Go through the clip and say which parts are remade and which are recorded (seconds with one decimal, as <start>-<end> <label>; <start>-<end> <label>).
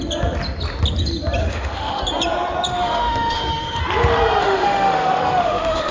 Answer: 0.0-1.4 recorded; 1.4-2.0 remade; 2.0-2.7 recorded; 2.7-3.8 remade; 3.8-4.4 recorded; 4.4-5.9 remade